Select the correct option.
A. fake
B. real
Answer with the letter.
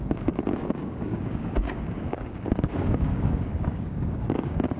A